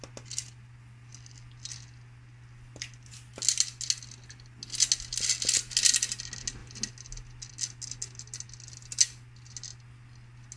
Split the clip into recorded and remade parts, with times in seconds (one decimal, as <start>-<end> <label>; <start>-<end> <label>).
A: 0.0-10.6 recorded